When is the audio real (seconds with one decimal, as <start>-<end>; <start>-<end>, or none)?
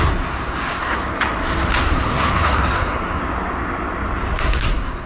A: 1.0-1.8; 3.2-4.4